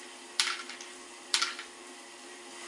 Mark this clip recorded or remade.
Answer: recorded